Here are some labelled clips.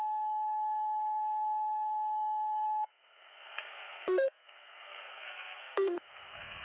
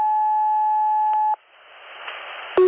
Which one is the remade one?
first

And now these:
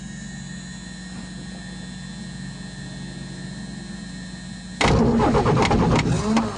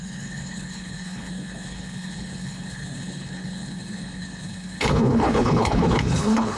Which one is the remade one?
second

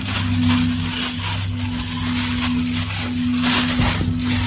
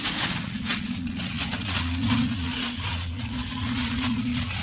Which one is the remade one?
second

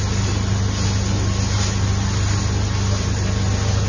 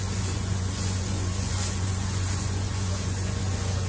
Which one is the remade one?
second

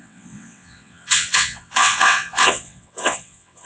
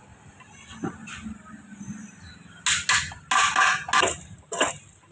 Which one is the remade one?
first